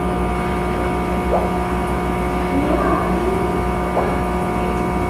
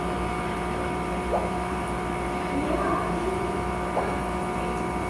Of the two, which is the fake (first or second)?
second